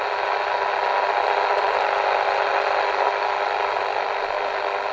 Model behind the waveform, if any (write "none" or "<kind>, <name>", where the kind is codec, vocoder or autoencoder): none